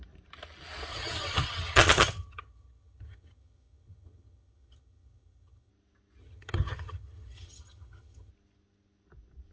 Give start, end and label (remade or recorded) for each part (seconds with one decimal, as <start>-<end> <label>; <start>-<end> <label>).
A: 0.0-0.9 recorded; 0.9-5.7 remade; 5.7-6.2 recorded; 6.2-8.3 remade; 8.3-9.5 recorded